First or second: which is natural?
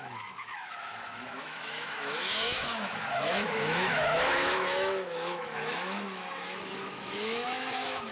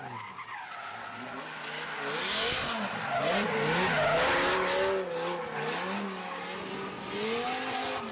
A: second